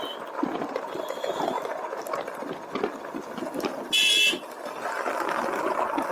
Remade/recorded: recorded